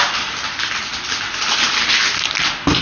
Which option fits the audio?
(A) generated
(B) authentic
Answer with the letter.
B